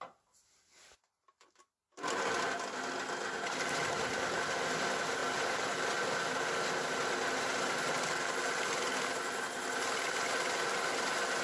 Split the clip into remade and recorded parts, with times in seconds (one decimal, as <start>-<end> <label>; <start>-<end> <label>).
0.0-11.4 recorded